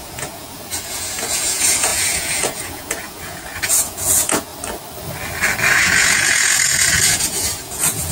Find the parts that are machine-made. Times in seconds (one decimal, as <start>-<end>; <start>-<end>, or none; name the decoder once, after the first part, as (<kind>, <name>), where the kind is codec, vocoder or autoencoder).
0.0-4.5 (vocoder, Vocos); 5.7-8.1